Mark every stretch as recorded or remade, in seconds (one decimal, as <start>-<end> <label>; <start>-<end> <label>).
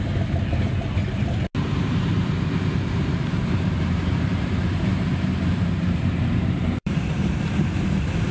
0.0-2.1 recorded; 2.1-6.9 remade; 6.9-8.3 recorded